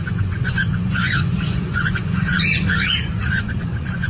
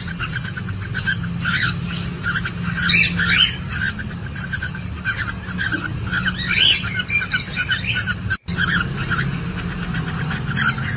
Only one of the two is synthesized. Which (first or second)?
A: first